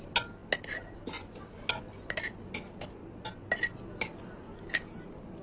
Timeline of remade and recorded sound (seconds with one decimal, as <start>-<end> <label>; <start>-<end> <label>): 0.0-5.4 recorded